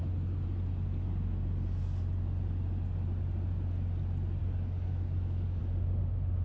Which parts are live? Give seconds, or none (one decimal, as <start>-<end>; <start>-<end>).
0.0-4.4; 5.6-6.4